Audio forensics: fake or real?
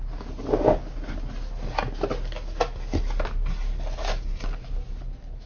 real